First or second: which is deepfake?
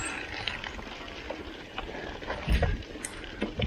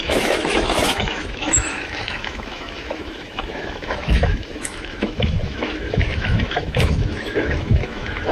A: second